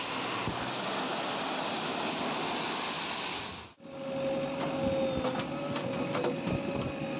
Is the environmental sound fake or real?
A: real